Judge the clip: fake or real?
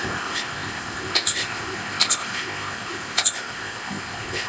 fake